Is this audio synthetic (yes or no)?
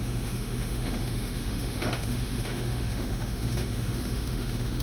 yes